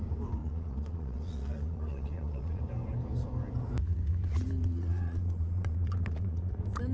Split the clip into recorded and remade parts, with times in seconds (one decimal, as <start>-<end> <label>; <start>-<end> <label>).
0.0-0.4 recorded; 0.4-2.6 remade; 2.6-4.6 recorded; 4.6-6.5 remade; 6.5-6.9 recorded